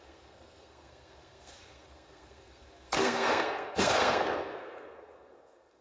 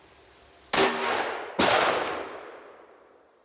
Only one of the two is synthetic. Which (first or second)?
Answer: first